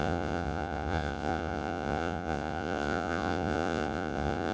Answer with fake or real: fake